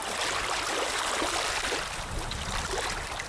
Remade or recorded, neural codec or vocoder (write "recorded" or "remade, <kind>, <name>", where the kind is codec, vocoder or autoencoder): recorded